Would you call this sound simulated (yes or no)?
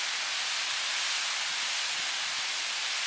no